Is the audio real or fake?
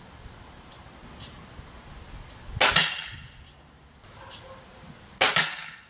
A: real